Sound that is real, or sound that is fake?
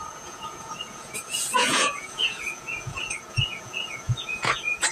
fake